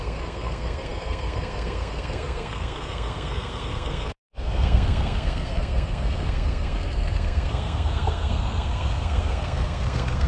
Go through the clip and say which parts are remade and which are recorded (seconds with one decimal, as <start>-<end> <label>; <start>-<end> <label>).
0.0-10.3 remade